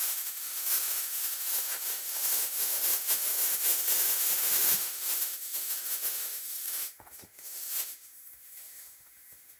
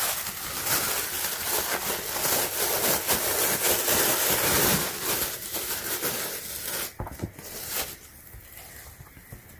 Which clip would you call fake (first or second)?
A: first